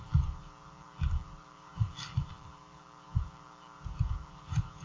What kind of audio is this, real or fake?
fake